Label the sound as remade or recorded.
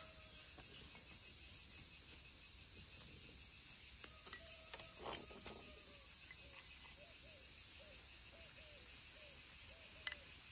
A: recorded